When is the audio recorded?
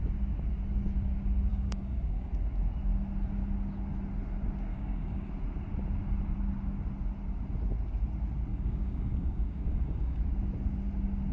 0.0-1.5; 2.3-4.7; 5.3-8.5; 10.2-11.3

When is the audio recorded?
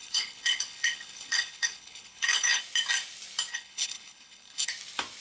2.6-3.5; 4.7-5.2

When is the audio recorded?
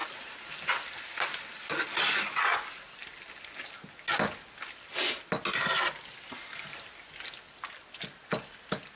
0.0-9.0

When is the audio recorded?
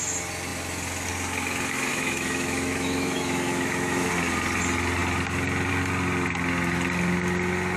0.0-1.9; 4.1-7.8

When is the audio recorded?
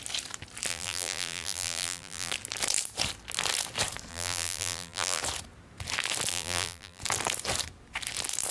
0.0-0.7; 2.3-4.1; 5.2-6.3; 7.0-8.5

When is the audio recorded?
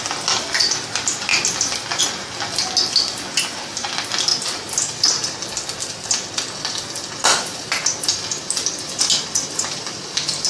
0.0-10.5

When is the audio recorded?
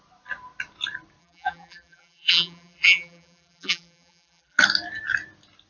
0.0-1.2; 4.6-5.7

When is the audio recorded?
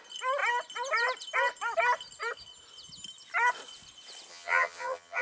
0.0-4.3